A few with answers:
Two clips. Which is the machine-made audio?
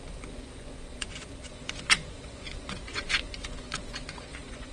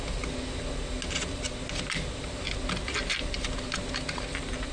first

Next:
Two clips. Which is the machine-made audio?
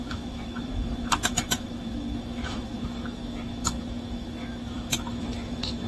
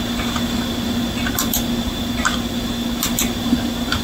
first